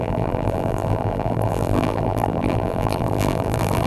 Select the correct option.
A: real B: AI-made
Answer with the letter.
B